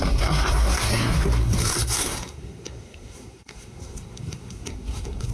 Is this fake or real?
fake